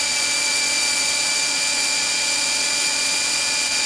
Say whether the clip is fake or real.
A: fake